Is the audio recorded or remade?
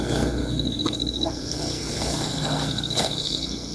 remade